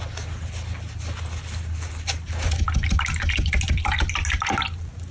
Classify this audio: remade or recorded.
recorded